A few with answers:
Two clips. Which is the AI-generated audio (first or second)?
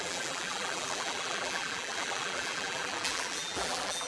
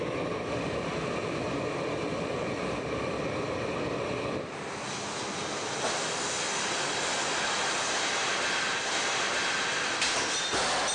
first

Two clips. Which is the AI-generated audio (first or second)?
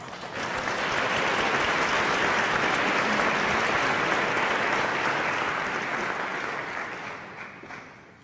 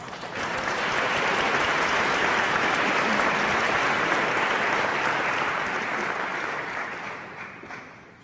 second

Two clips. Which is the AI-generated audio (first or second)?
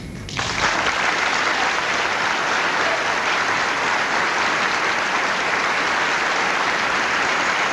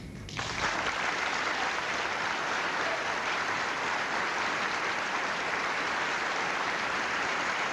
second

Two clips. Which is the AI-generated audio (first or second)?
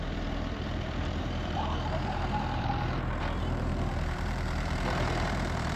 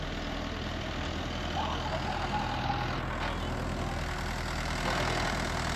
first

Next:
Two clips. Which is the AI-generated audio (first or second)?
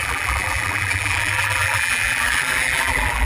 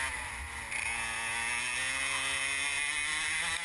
first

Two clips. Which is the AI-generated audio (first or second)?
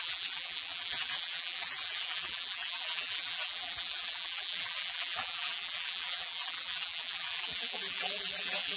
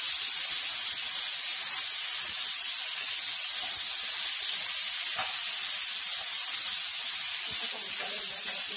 first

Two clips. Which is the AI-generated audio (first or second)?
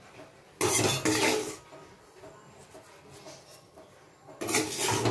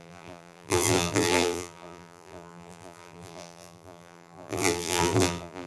second